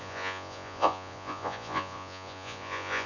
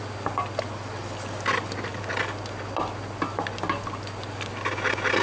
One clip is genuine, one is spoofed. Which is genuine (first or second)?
second